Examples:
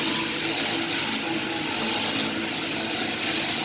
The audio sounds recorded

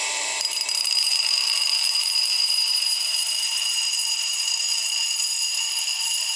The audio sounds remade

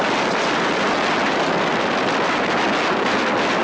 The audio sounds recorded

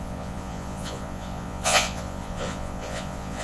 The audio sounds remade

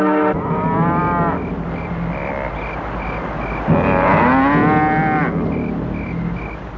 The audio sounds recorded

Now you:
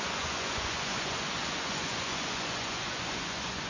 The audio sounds remade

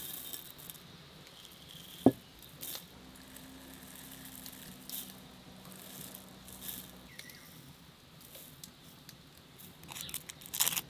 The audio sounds recorded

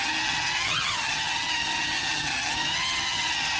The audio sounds remade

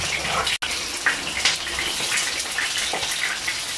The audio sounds recorded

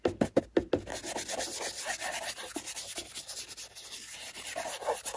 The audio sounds recorded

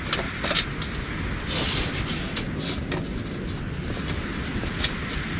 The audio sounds recorded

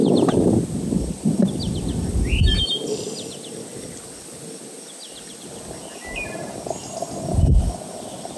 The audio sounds recorded